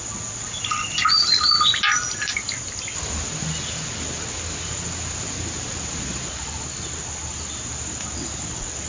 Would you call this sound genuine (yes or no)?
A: yes